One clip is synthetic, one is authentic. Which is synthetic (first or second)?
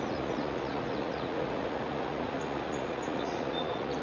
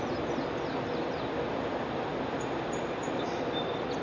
first